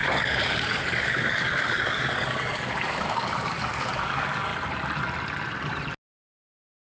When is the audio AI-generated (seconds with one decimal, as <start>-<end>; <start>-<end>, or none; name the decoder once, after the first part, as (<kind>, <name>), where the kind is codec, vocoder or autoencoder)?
0.0-4.5 (codec, DAC); 6.4-6.9